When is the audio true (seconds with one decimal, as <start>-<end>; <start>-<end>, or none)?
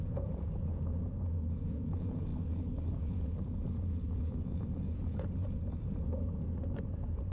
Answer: 2.3-2.9